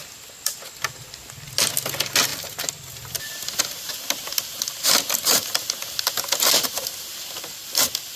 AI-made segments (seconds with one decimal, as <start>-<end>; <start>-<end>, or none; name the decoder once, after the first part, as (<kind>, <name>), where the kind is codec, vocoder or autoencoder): none

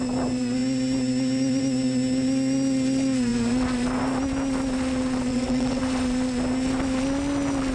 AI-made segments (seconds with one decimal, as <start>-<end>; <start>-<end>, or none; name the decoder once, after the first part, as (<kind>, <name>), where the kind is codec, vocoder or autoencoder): 5.3-5.8 (vocoder, WaveNeXt)

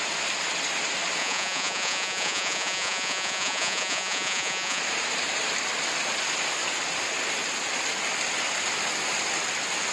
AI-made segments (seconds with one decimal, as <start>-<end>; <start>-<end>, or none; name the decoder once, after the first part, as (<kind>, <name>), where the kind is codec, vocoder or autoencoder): 1.2-4.8 (vocoder, Vocos)

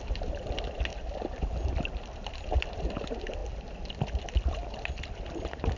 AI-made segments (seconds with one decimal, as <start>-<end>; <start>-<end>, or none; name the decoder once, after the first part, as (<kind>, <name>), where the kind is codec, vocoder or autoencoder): 0.0-3.4 (vocoder, BigVGAN v2); 4.2-5.8

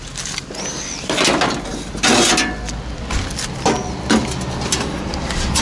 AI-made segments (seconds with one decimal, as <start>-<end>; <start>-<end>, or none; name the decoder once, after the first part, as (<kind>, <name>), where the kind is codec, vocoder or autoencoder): none

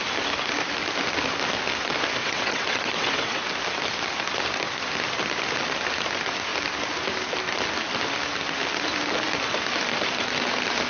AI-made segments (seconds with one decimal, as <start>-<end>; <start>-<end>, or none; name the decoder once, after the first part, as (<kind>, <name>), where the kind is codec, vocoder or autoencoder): 2.2-3.4 (vocoder, WaveNeXt)

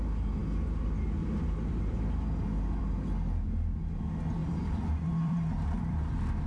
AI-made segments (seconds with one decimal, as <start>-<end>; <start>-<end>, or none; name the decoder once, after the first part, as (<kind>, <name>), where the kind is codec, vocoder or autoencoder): 4.4-6.0 (vocoder, BigVGAN v2)